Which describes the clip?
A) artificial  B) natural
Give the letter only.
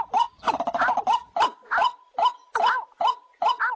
B